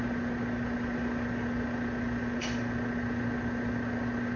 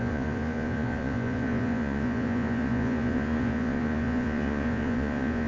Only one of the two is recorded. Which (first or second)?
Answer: first